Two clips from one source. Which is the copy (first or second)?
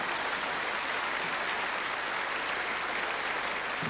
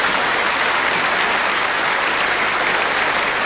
second